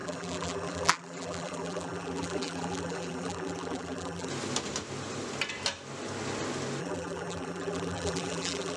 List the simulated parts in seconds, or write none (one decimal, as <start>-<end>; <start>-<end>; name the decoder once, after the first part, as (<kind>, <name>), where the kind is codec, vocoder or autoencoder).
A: 0.0-4.3 (vocoder, BigVGAN v2); 6.8-8.8